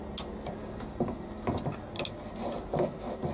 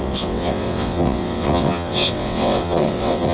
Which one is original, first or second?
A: first